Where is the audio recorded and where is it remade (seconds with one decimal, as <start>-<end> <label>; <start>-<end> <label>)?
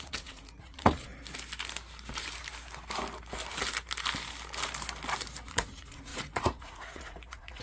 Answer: 0.0-1.1 remade; 1.1-5.5 recorded; 5.5-7.6 remade